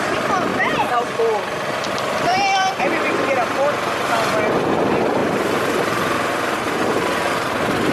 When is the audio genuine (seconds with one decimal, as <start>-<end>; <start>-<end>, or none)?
0.0-0.5; 1.2-2.3; 2.8-5.2